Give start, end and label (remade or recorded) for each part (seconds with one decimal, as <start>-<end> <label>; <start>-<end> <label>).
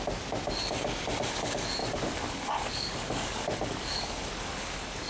0.0-1.8 recorded; 1.8-5.1 remade